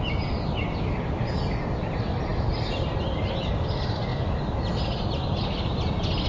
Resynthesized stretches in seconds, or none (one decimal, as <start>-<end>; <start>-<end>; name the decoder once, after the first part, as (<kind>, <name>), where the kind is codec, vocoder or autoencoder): none